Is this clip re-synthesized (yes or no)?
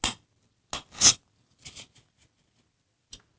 no